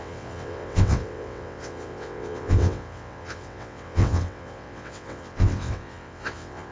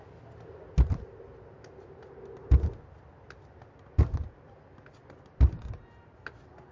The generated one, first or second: first